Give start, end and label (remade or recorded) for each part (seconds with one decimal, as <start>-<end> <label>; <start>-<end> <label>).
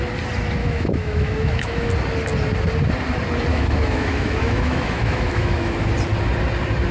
0.0-0.6 recorded; 0.6-1.9 remade; 1.9-3.5 recorded; 3.5-5.9 remade; 5.9-6.9 recorded